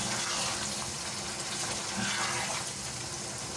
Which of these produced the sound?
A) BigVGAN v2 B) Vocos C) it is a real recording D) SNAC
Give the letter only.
C